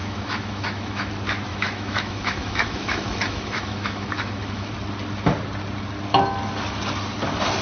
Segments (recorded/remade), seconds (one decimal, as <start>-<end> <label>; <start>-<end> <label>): 0.0-1.1 remade; 1.1-1.5 recorded; 1.5-4.7 remade; 4.7-7.6 recorded